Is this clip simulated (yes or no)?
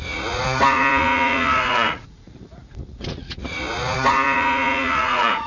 yes